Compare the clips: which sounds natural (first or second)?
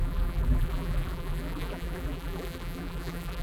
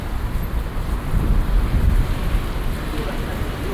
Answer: second